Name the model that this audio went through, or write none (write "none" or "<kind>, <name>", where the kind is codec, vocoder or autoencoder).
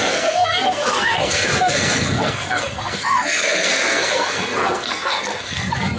codec, SNAC